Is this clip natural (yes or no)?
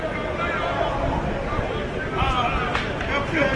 yes